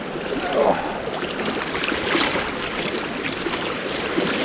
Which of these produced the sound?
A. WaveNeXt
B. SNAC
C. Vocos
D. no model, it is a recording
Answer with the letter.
D